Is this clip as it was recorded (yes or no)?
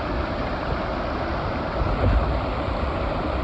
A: yes